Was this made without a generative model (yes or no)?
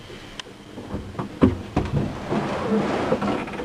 yes